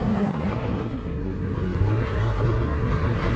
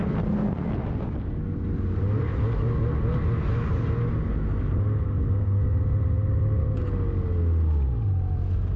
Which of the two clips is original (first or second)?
second